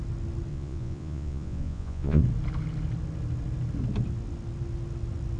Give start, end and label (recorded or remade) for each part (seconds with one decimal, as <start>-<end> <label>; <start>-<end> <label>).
0.0-0.5 recorded; 0.5-2.2 remade; 2.2-5.4 recorded